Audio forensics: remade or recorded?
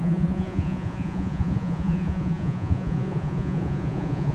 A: remade